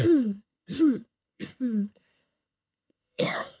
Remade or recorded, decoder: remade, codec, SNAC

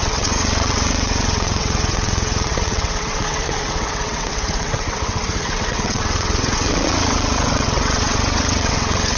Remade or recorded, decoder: remade, vocoder, WaveNeXt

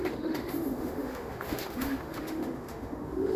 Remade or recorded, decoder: remade, autoencoder, DAC-VAE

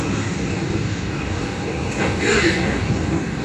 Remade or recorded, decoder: remade, codec, DAC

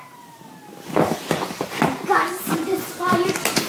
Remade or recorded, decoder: recorded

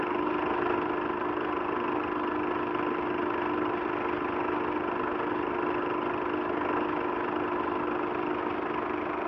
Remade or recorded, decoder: recorded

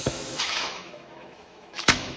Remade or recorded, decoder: remade, autoencoder, DAC-VAE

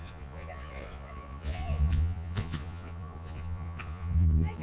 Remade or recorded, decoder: remade, vocoder, Vocos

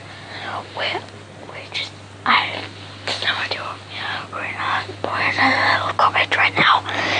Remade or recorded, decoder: recorded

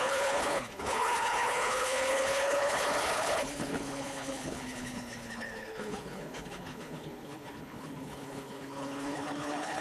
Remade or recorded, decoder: remade, codec, HILCodec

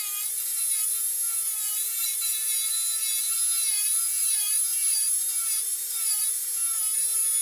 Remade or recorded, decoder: recorded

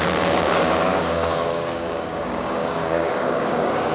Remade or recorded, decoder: remade, codec, DAC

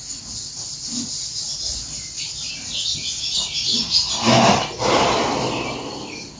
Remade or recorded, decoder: recorded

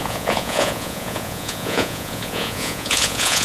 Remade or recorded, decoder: remade, vocoder, Vocos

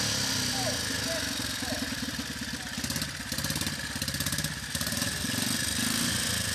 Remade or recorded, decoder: recorded